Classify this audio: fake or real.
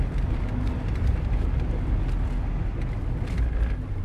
real